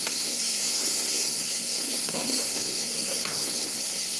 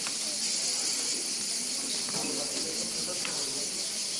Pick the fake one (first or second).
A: first